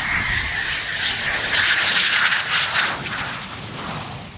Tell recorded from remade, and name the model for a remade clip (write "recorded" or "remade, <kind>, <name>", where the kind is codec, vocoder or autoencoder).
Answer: recorded